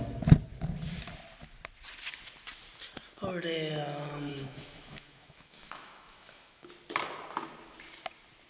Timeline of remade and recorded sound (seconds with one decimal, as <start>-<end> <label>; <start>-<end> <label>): 0.0-4.3 recorded; 4.3-6.7 remade; 6.7-8.5 recorded